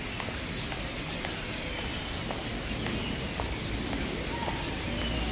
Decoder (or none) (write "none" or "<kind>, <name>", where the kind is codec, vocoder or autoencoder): none